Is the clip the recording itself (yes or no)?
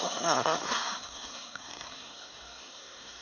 no